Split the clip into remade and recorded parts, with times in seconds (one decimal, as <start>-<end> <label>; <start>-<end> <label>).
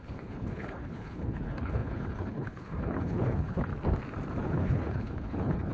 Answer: 0.0-3.7 remade; 3.7-4.4 recorded; 4.4-5.7 remade